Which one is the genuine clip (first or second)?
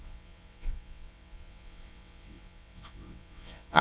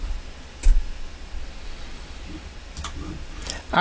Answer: second